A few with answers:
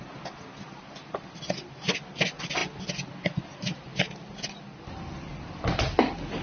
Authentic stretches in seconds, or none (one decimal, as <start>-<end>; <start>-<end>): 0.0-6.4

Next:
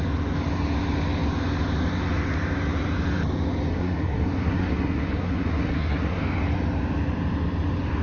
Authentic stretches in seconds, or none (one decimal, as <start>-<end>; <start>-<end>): 0.0-3.7; 6.2-8.0

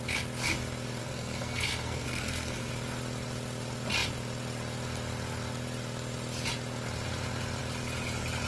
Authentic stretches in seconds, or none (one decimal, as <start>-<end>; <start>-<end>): 0.0-1.0; 2.7-8.5